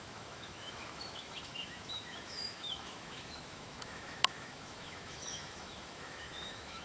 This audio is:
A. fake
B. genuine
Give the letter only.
A